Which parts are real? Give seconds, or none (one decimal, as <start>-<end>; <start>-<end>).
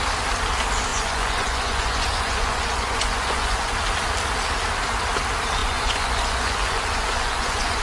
0.0-0.9; 3.7-5.6